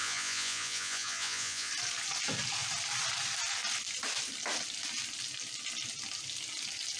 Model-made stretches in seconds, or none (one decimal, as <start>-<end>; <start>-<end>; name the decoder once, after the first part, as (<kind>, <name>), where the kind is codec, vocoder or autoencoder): 0.0-1.7 (vocoder, Vocos)